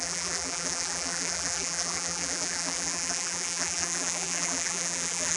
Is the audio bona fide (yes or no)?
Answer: no